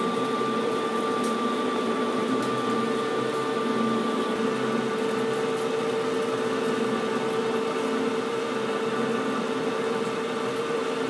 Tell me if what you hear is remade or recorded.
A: recorded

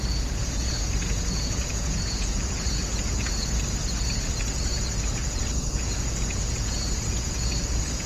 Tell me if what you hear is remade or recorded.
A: remade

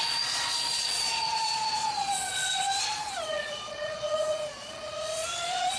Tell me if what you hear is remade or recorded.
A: remade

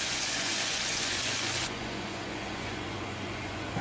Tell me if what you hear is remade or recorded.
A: remade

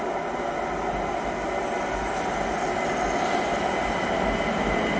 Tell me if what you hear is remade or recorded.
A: recorded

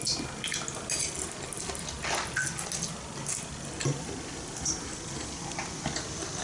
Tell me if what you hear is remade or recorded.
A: recorded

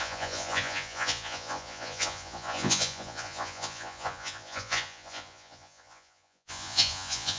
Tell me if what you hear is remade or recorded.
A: remade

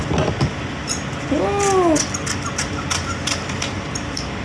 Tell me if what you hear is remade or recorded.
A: recorded